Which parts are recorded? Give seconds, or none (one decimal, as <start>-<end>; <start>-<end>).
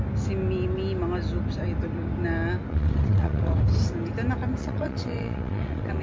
0.0-2.7; 3.6-4.6